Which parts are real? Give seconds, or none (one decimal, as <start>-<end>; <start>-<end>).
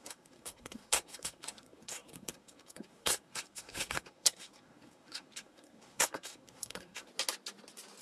7.1-8.0